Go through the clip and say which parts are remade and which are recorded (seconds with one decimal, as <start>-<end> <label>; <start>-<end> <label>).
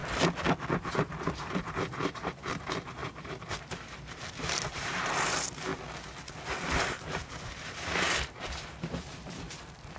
0.0-0.8 recorded; 0.8-5.7 remade; 5.7-6.8 recorded; 6.8-10.0 remade